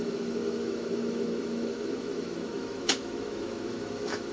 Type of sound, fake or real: fake